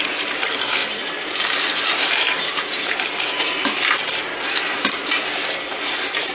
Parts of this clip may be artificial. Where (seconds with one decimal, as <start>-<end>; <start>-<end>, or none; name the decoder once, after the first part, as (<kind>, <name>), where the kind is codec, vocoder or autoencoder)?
0.0-6.3 (vocoder, BigVGAN v2)